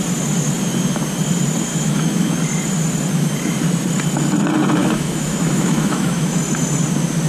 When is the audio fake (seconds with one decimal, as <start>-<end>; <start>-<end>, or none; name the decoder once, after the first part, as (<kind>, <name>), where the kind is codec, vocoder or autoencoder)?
1.7-2.3 (autoencoder, DAC-VAE); 4.8-6.4

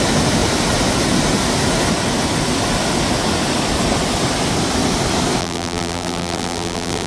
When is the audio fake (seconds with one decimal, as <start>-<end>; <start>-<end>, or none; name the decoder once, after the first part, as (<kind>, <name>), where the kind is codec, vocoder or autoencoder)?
5.4-7.1 (vocoder, BigVGAN v2)

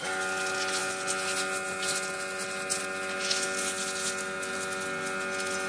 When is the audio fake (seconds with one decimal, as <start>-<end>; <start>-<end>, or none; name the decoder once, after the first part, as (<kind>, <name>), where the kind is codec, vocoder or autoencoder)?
none

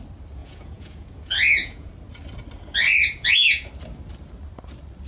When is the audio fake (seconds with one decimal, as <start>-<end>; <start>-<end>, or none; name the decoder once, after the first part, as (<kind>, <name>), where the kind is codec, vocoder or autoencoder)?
0.4-1.9 (vocoder, Vocos); 3.0-3.7